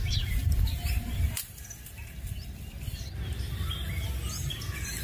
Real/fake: real